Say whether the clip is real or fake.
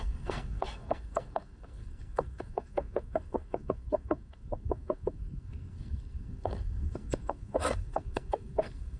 fake